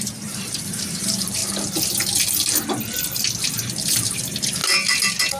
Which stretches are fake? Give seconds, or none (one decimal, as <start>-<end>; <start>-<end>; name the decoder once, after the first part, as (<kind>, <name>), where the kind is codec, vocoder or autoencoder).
0.0-1.4 (vocoder, BigVGAN v2); 3.8-4.6